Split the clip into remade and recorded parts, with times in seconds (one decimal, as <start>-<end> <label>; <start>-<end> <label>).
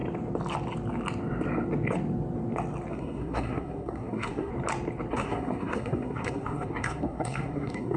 0.0-2.9 recorded; 2.9-4.5 remade; 4.5-5.1 recorded; 5.1-8.0 remade